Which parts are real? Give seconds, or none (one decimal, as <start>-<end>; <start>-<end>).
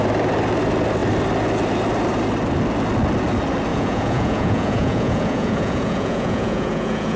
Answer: 0.0-3.7